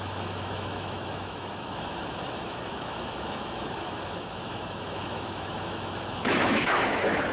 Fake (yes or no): yes